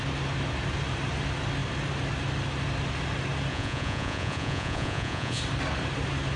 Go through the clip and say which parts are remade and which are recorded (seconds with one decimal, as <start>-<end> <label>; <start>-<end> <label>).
0.0-3.5 recorded; 3.5-5.4 remade; 5.4-6.4 recorded